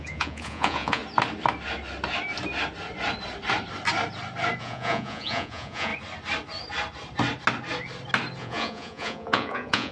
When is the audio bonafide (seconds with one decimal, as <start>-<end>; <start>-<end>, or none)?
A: 1.0-4.6; 5.9-8.4